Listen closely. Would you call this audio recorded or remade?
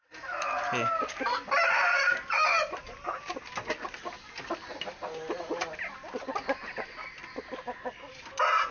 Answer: recorded